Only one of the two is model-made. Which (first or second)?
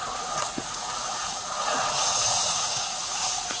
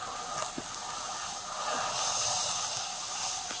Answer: first